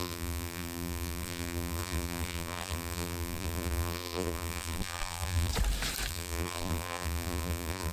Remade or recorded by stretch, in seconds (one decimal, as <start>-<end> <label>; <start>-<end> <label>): 0.0-5.5 remade; 5.5-6.1 recorded; 6.1-7.9 remade